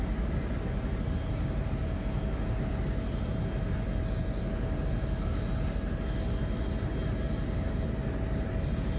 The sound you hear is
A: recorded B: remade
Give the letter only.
A